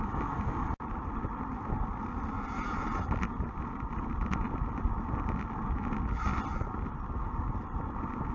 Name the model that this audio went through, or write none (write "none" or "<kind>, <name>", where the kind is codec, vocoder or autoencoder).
none